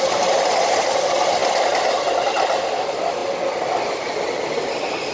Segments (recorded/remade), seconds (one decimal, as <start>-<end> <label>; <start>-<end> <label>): 0.0-5.1 recorded